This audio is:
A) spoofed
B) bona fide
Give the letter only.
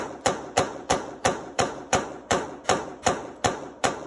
A